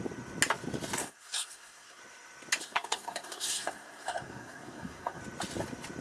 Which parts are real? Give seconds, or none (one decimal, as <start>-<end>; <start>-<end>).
0.0-1.0; 2.0-2.6; 5.2-6.0